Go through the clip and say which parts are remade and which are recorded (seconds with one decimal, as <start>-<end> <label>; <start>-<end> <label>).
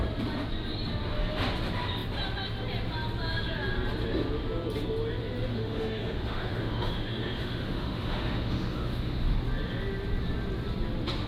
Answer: 0.0-5.5 recorded; 5.5-9.4 remade; 9.4-11.3 recorded